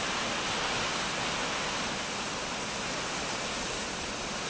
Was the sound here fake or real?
real